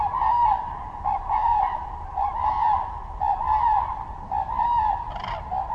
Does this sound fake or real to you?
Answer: real